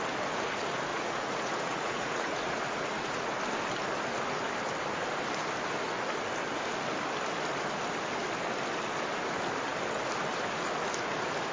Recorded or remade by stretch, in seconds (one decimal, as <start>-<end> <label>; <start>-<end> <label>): 0.0-0.9 recorded; 0.9-3.3 remade; 3.3-11.5 recorded